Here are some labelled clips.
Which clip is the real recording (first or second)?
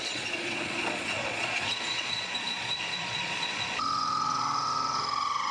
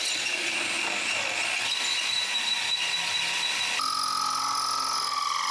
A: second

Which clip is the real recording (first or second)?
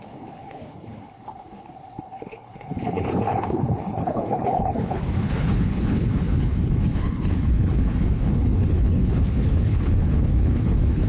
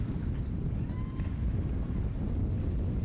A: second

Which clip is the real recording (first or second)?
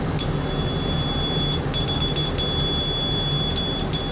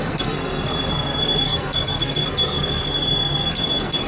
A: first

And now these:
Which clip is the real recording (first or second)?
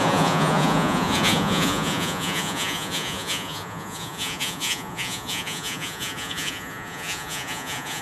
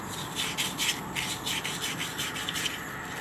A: second